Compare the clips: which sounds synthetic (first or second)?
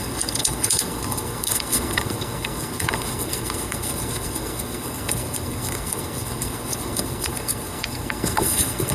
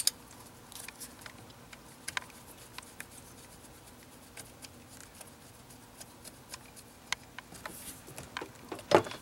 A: first